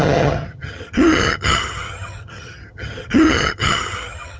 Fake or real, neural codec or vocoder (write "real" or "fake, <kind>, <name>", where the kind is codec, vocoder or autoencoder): fake, vocoder, HiFi-GAN